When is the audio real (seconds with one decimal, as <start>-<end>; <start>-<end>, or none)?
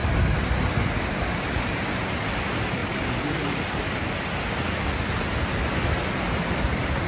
0.0-2.8; 4.1-7.1